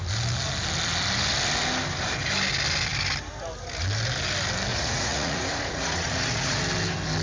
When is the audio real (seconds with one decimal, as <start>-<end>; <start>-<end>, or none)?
0.0-4.7; 6.6-7.2